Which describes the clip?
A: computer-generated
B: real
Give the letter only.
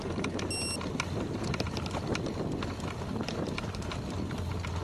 B